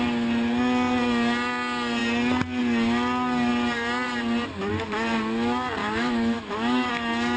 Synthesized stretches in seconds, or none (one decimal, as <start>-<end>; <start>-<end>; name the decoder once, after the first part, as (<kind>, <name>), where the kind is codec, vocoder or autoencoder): 5.8-6.9 (autoencoder, DAC-VAE)